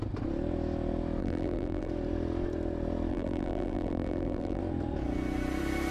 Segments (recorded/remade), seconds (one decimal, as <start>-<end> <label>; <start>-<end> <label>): 0.0-1.2 recorded; 1.2-1.9 remade; 1.9-3.1 recorded; 3.1-4.6 remade; 4.6-5.9 recorded